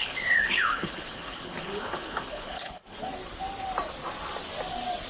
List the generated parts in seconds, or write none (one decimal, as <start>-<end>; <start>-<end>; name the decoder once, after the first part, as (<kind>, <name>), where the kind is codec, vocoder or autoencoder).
0.0-3.1 (codec, HILCodec)